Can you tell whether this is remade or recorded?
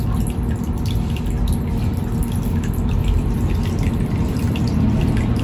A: recorded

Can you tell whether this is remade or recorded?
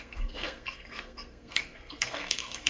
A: remade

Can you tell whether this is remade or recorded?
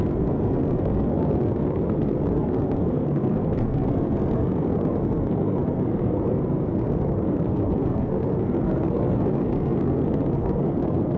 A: remade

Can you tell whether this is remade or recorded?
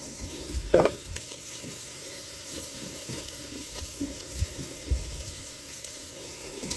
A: remade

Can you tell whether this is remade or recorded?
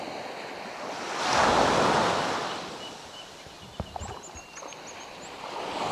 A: recorded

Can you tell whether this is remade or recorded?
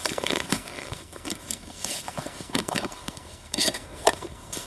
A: remade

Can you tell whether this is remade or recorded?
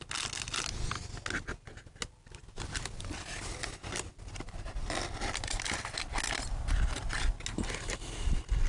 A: recorded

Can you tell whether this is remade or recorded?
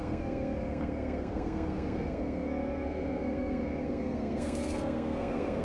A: remade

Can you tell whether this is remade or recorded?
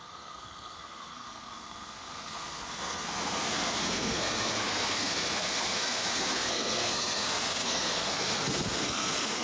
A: remade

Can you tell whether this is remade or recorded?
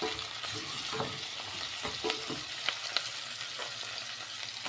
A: recorded